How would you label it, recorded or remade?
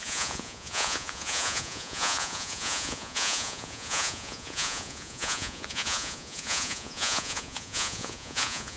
remade